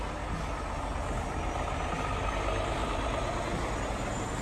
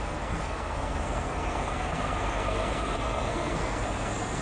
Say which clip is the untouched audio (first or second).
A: first